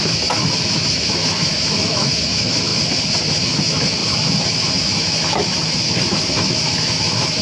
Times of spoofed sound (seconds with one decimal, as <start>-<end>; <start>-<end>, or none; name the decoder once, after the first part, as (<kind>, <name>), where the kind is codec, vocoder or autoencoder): 0.0-2.7 (autoencoder, DAC-VAE); 3.4-7.4